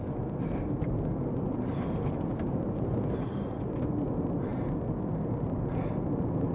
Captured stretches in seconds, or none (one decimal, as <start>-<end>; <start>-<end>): 0.0-6.5